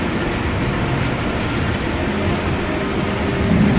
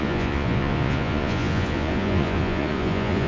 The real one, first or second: first